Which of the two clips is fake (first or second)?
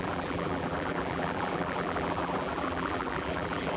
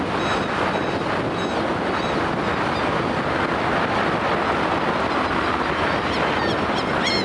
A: first